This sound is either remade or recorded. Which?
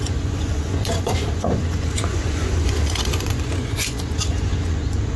remade